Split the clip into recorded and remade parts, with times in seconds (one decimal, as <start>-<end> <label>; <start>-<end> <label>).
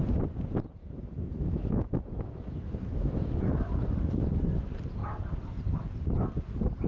0.0-0.8 recorded; 0.8-3.4 remade; 3.4-6.9 recorded